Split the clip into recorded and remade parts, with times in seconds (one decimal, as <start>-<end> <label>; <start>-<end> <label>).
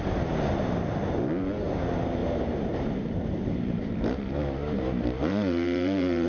0.0-2.2 recorded; 2.2-6.3 remade